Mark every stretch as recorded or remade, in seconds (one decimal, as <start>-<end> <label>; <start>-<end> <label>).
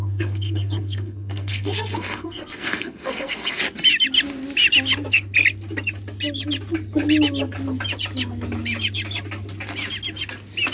0.0-3.6 remade; 3.6-10.7 recorded